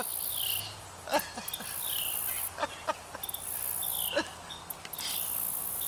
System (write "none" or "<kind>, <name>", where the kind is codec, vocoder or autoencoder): none